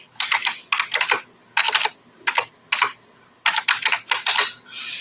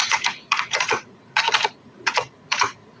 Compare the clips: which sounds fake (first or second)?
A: second